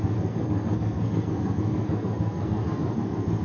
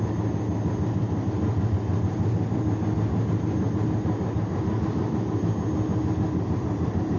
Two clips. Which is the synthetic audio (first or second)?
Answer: first